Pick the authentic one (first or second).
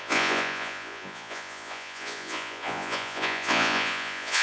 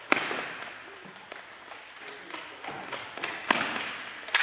second